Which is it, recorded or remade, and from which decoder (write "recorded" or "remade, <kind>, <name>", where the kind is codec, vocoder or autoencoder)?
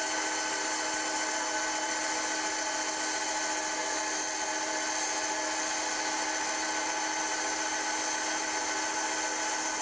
recorded